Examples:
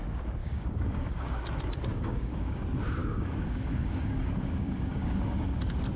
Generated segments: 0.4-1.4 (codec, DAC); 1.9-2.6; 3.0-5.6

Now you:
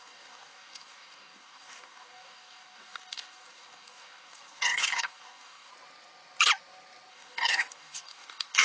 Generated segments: 0.0-5.7 (codec, DAC); 7.1-8.6

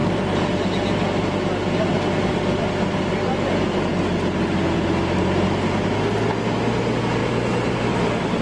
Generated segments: none

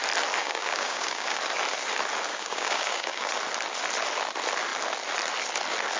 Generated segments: 0.4-1.4 (codec, DAC); 2.3-3.3

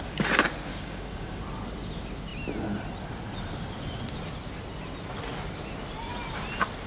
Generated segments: 0.7-1.4 (codec, DAC)

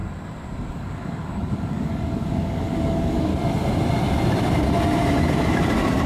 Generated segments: 0.7-3.3 (codec, DAC)